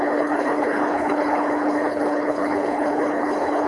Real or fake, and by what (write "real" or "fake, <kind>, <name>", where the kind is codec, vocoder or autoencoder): fake, codec, HILCodec